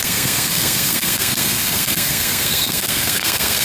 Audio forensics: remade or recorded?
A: remade